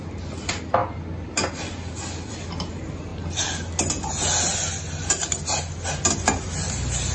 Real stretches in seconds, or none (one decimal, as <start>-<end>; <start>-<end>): 0.0-7.1